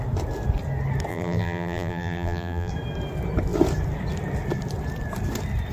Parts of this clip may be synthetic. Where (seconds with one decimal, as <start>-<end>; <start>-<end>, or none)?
1.1-2.7